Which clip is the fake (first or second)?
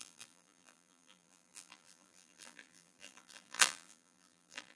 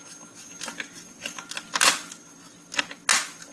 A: first